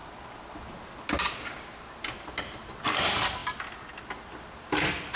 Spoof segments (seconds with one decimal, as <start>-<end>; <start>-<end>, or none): none